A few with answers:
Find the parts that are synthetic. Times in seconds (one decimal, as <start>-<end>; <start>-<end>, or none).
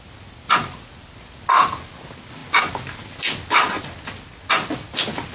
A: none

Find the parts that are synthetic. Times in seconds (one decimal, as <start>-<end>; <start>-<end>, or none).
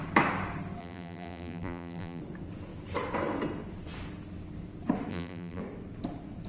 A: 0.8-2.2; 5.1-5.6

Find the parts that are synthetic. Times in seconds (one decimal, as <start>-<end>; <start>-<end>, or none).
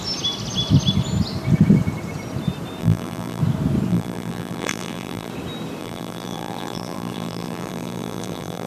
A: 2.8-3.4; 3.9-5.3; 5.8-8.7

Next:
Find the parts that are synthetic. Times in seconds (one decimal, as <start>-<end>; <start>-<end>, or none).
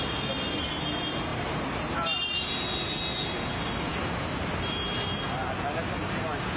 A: 1.3-2.2